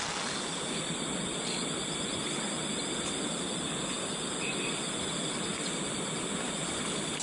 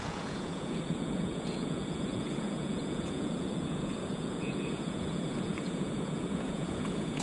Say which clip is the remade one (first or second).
second